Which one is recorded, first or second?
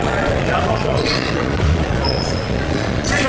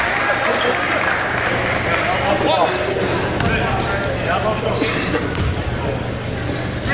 second